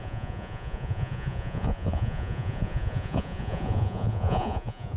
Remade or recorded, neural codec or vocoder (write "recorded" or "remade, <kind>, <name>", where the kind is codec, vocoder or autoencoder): remade, vocoder, Vocos